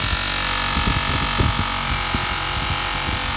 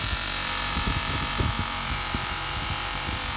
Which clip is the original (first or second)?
first